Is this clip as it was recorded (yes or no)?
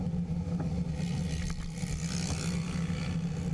yes